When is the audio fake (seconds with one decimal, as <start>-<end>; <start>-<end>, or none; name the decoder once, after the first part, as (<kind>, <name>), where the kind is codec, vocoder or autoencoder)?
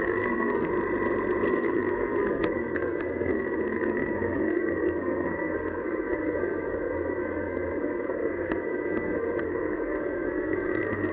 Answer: 0.0-0.7 (codec, SNAC); 1.5-11.1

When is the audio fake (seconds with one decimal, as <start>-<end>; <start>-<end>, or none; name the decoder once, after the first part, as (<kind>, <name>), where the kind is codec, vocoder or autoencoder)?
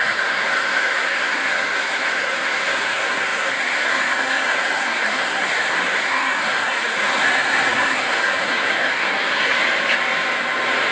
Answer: 0.0-9.6 (codec, SNAC)